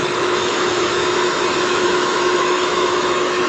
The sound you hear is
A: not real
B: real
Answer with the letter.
A